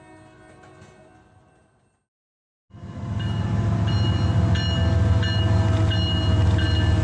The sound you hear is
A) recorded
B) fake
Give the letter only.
A